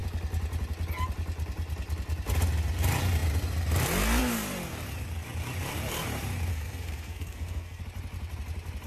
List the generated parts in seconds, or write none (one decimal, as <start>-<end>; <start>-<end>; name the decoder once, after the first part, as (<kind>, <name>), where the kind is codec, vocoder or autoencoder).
6.5-7.8 (codec, SNAC)